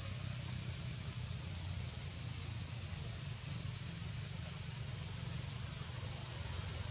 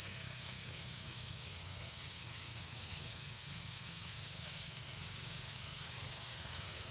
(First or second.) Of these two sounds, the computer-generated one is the second